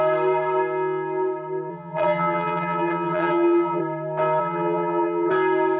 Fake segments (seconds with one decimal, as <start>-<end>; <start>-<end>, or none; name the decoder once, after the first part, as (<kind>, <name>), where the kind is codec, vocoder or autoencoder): 1.7-3.8 (vocoder, HiFi-GAN); 4.4-5.3